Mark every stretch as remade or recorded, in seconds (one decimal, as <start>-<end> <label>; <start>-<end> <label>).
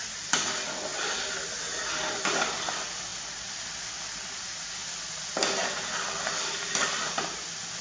0.0-7.8 recorded